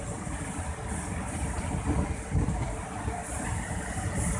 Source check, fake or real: fake